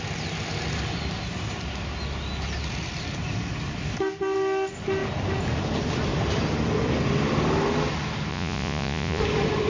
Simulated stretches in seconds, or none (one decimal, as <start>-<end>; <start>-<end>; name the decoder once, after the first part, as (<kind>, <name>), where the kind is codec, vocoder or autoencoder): 8.3-9.2 (vocoder, Vocos)